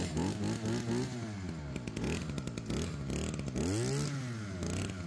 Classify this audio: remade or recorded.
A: recorded